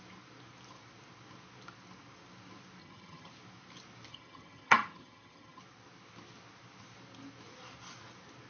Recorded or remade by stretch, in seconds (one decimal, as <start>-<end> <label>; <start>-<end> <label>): 0.0-2.8 recorded; 2.8-3.3 remade; 3.3-4.1 recorded; 4.1-5.6 remade; 5.6-8.5 recorded